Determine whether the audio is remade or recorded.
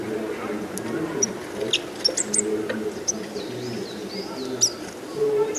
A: recorded